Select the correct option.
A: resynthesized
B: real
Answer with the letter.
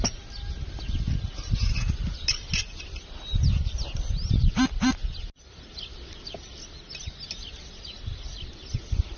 B